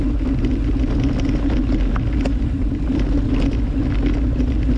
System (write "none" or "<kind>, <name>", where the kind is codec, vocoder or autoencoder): none